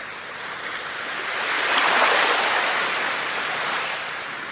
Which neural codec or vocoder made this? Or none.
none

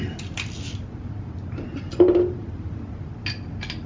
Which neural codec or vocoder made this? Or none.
none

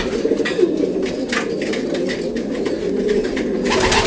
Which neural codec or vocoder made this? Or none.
none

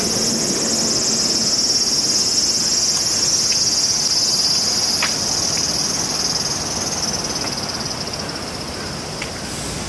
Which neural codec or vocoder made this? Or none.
none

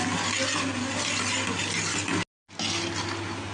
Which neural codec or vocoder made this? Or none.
none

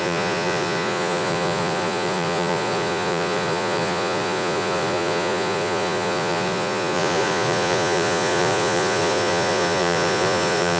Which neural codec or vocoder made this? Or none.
vocoder, Vocos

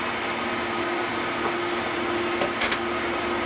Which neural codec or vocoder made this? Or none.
none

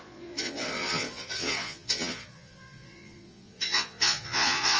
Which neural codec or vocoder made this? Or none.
vocoder, Vocos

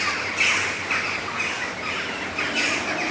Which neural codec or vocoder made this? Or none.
none